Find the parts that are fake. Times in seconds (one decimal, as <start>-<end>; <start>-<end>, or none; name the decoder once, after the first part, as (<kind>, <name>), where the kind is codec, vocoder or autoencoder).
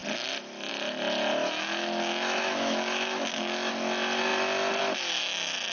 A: 1.4-3.7 (autoencoder, DAC-VAE)